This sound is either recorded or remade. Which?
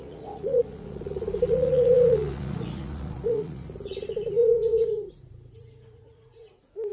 remade